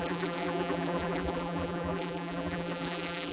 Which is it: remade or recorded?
remade